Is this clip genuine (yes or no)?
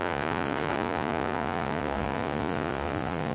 no